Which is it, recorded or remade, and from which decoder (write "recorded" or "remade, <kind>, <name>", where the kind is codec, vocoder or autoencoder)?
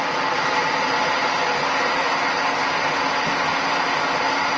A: recorded